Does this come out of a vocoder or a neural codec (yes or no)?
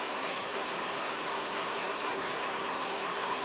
yes